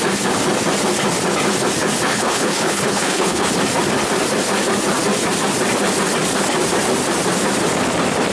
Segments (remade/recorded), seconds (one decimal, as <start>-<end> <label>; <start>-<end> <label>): 0.0-2.1 recorded; 2.1-3.5 remade; 3.5-8.3 recorded